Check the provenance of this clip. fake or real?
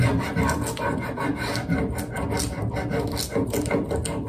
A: real